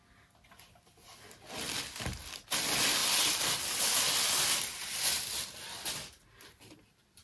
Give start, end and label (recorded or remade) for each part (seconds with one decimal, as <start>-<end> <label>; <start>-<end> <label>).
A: 0.0-7.2 recorded

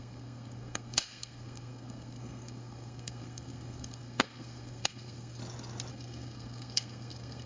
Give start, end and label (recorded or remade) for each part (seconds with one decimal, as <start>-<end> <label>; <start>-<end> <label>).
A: 0.0-5.4 remade; 5.4-5.9 recorded; 5.9-7.5 remade

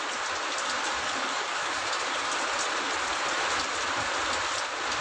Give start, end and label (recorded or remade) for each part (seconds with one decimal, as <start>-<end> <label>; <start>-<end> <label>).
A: 0.0-1.0 recorded; 1.0-2.3 remade; 2.3-5.0 recorded

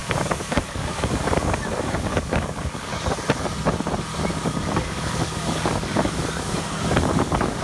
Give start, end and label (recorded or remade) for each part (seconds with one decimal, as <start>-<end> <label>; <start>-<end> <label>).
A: 0.0-2.9 remade; 2.9-4.3 recorded; 4.3-7.6 remade

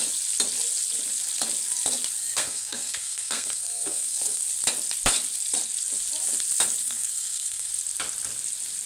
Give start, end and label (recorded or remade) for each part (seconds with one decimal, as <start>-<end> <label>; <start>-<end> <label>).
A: 0.0-2.2 recorded; 2.2-4.4 remade; 4.4-6.8 recorded; 6.8-7.7 remade; 7.7-8.9 recorded

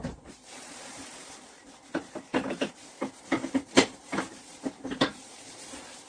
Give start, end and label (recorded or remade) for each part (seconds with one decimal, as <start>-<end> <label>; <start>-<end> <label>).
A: 0.0-2.9 remade; 2.9-3.5 recorded; 3.5-6.1 remade

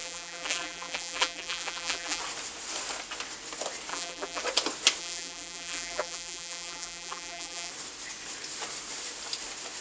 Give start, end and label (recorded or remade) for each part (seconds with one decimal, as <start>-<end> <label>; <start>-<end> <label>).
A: 0.0-2.2 remade; 2.2-3.9 recorded; 3.9-4.4 remade; 4.4-5.0 recorded; 5.0-7.7 remade; 7.7-9.8 recorded

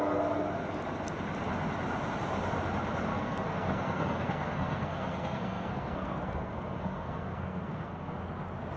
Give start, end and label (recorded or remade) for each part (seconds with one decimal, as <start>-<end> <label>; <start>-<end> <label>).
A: 0.0-3.1 recorded; 3.1-8.2 remade; 8.2-8.8 recorded